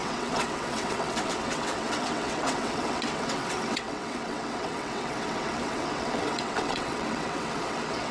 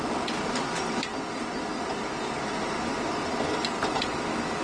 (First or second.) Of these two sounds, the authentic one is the second